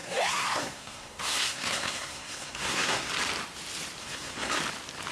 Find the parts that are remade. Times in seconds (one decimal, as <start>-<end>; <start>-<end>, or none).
0.0-3.1; 4.0-4.6